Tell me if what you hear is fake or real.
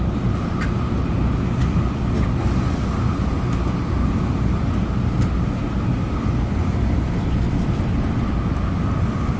real